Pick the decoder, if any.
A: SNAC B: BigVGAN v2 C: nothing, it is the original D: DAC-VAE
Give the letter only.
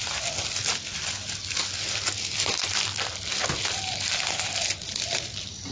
C